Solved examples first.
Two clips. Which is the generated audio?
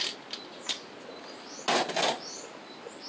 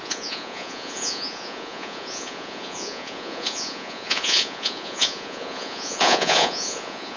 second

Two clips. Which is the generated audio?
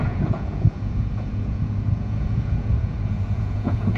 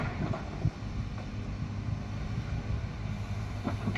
first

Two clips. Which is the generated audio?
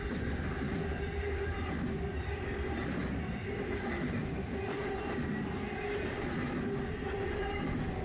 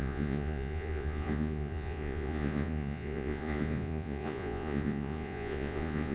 second